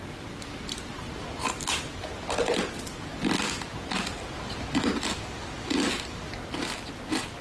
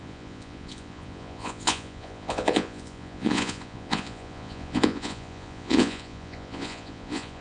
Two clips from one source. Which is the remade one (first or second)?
second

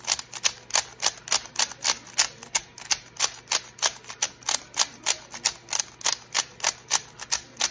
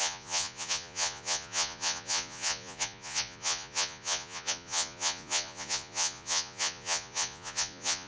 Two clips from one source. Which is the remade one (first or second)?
second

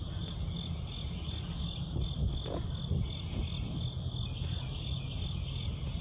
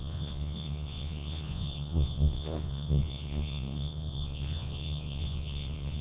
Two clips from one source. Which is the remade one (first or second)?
second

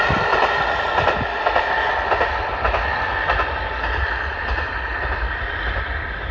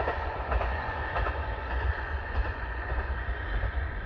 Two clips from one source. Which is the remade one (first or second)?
second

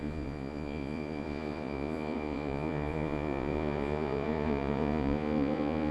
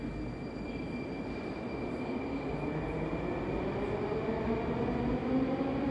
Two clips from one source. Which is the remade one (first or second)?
first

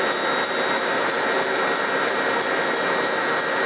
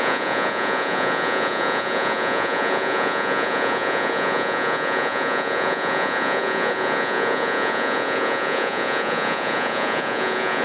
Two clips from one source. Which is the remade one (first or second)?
second